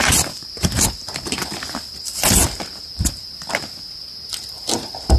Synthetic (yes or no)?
no